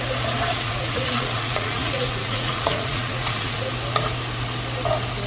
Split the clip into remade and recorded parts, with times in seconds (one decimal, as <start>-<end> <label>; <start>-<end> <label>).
0.0-0.5 recorded; 0.5-3.7 remade; 3.7-5.3 recorded